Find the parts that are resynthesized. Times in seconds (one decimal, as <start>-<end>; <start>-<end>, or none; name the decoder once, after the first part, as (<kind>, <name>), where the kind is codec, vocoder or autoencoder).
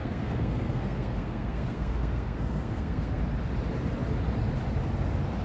0.0-3.2 (codec, SNAC)